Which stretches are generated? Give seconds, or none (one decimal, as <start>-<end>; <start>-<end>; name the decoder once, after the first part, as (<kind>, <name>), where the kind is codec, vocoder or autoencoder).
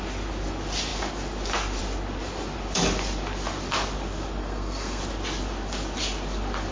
4.4-5.0 (codec, SNAC)